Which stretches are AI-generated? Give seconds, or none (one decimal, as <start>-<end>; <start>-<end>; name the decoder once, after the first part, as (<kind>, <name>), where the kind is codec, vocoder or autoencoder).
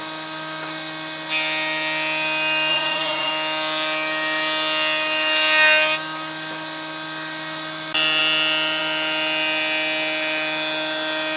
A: 2.7-3.3 (vocoder, Vocos)